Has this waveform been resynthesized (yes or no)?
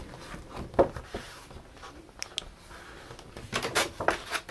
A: no